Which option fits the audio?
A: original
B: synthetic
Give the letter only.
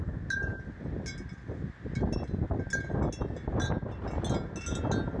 A